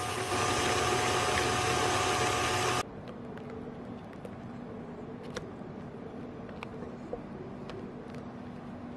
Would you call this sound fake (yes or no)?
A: no